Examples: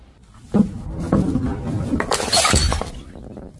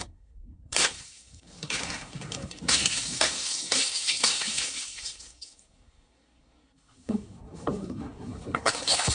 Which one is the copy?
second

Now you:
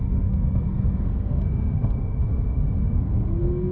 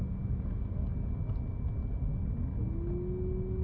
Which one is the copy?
first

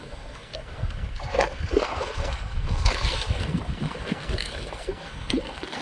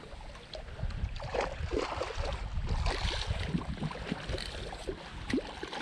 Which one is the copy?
first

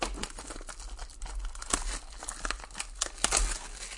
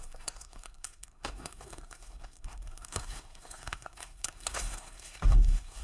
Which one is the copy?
second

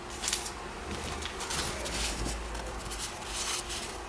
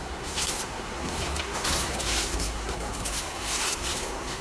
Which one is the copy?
second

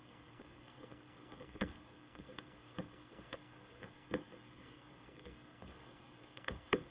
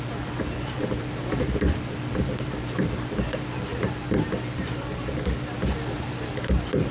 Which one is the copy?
first